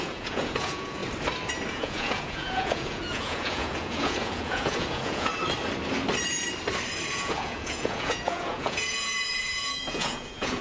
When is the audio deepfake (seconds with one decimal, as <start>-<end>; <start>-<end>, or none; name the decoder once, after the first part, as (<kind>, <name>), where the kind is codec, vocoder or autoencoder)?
0.0-1.0 (vocoder, Vocos); 1.7-5.3; 7.1-10.6